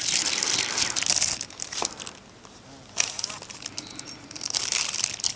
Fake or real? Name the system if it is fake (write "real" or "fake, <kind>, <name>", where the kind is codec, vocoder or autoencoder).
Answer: real